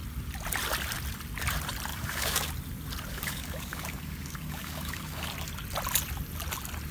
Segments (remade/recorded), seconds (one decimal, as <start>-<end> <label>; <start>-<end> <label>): 0.0-1.9 recorded; 1.9-2.5 remade; 2.5-3.1 recorded; 3.1-5.3 remade; 5.3-6.9 recorded

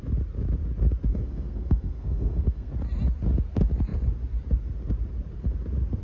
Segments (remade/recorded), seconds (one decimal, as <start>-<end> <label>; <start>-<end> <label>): 0.0-1.1 recorded; 1.1-2.7 remade; 2.7-6.0 recorded